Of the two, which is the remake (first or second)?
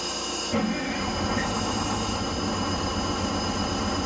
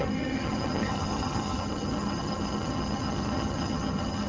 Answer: second